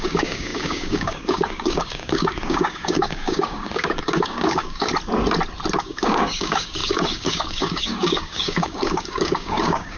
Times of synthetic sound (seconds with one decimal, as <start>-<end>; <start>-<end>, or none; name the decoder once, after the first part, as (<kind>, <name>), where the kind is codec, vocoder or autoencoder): 0.0-4.9 (codec, DAC); 5.8-10.0